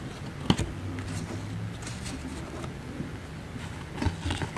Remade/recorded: recorded